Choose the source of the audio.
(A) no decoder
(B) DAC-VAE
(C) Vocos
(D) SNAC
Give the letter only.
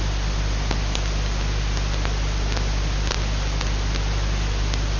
A